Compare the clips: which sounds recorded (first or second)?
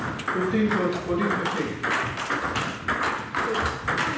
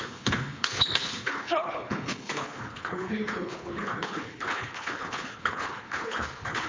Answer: first